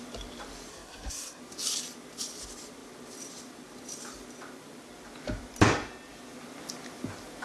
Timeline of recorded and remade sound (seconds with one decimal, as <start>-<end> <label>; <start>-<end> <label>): 0.0-0.7 recorded; 0.7-1.4 remade; 1.4-7.4 recorded